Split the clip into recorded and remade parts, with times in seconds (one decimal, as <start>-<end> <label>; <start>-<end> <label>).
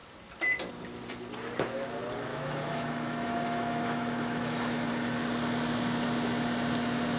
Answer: 0.0-2.3 recorded; 2.3-4.9 remade; 4.9-7.2 recorded